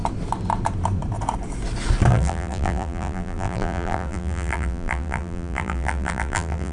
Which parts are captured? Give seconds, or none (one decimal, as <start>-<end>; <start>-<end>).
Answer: 0.0-2.1